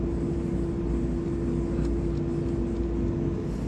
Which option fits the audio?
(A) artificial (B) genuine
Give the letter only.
B